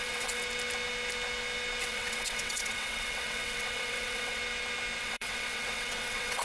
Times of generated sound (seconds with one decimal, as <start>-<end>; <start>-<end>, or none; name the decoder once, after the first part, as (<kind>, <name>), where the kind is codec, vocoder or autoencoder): 0.0-0.4 (vocoder, WaveNeXt); 1.8-4.4; 5.0-6.4